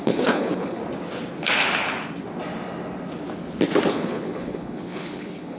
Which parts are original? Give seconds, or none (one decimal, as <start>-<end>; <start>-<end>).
0.8-3.9